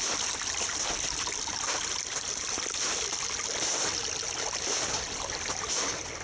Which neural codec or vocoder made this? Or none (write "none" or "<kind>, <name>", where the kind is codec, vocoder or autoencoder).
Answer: none